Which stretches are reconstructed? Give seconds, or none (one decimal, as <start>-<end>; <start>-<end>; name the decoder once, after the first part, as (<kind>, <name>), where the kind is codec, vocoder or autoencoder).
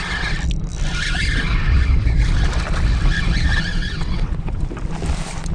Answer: 3.7-4.6 (vocoder, WaveNeXt)